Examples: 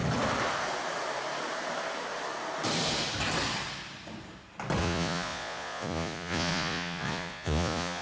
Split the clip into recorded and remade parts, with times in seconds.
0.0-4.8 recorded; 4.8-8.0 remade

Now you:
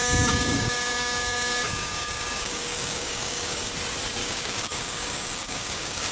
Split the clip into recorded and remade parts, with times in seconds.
0.0-3.7 remade; 3.7-4.2 recorded; 4.2-6.1 remade

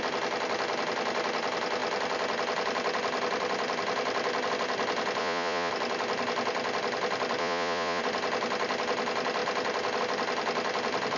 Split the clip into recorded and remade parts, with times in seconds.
0.0-5.2 recorded; 5.2-5.7 remade; 5.7-7.4 recorded; 7.4-8.0 remade; 8.0-11.2 recorded

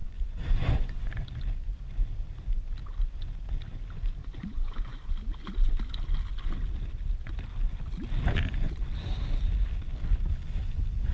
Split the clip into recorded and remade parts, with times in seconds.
0.0-1.1 remade; 1.1-4.2 recorded; 4.2-5.1 remade; 5.1-11.1 recorded

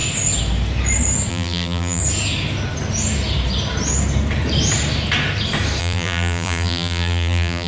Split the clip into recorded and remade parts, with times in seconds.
0.0-1.3 recorded; 1.3-2.0 remade; 2.0-5.8 recorded; 5.8-7.7 remade

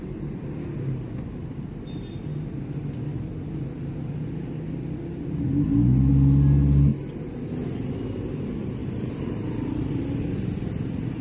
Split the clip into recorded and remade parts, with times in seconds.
0.0-8.8 recorded; 8.8-10.3 remade; 10.3-11.2 recorded